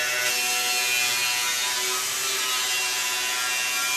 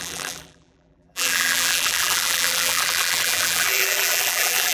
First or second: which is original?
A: first